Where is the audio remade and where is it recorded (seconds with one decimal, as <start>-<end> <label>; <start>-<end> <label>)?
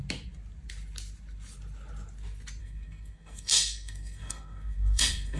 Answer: 0.0-2.6 recorded; 2.6-5.4 remade